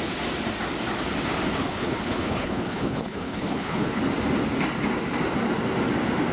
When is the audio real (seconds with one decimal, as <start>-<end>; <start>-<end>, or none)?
0.0-1.6; 4.0-6.3